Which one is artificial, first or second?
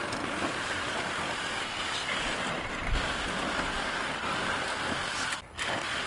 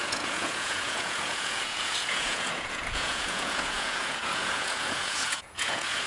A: second